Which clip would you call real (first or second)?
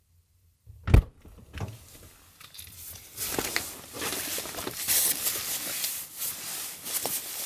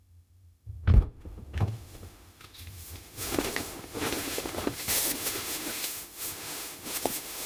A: first